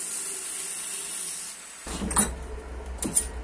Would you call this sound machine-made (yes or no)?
no